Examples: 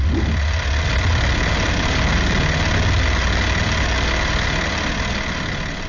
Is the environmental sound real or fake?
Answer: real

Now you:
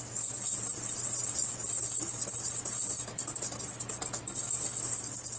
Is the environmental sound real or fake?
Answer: fake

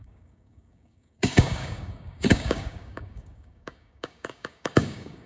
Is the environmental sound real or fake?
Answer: fake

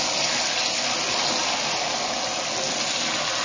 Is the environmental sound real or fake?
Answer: real